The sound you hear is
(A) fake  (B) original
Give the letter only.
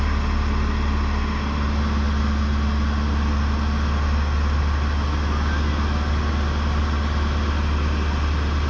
B